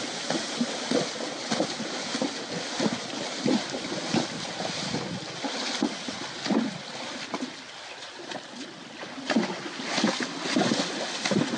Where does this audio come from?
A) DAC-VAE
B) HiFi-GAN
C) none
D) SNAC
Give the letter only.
C